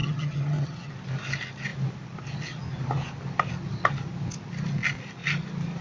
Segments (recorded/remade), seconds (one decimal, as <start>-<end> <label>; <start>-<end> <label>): 0.0-0.9 remade; 0.9-5.8 recorded